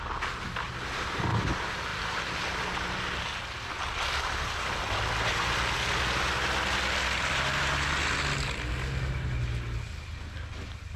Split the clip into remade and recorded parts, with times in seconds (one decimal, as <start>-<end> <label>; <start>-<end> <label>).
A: 0.0-11.0 recorded